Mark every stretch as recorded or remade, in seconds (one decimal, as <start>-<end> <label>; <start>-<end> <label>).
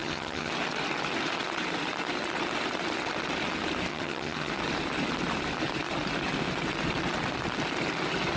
0.0-0.5 remade; 0.5-3.9 recorded; 3.9-4.5 remade; 4.5-8.4 recorded